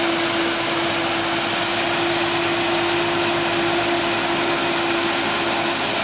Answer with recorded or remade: recorded